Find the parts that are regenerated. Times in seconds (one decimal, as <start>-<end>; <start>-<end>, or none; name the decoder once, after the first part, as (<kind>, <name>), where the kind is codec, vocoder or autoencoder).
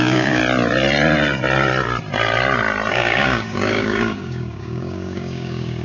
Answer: 0.0-0.4 (codec, DAC); 2.9-5.8